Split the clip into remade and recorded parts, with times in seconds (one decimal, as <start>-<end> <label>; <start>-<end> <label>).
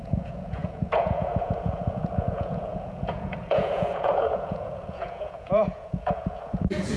0.0-7.0 remade